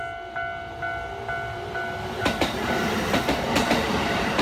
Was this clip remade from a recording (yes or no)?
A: no